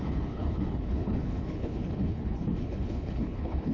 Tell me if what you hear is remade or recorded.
remade